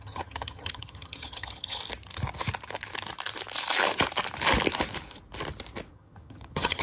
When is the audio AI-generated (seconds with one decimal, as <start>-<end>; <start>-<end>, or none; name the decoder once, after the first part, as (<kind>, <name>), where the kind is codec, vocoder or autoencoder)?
0.0-1.8 (vocoder, HiFi-GAN); 5.9-6.8